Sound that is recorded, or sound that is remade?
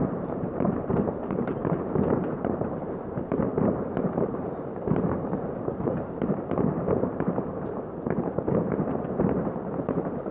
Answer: remade